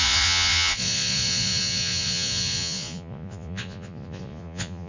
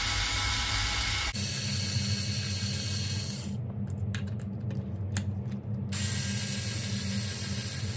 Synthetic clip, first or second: first